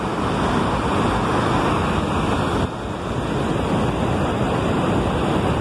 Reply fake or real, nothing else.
real